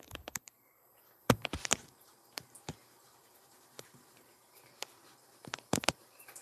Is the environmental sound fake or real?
fake